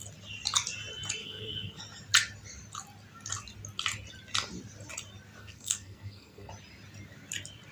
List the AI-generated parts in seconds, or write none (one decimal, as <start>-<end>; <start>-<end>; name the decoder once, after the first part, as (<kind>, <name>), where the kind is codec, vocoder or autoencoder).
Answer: 1.2-1.8 (codec, SNAC); 5.4-6.5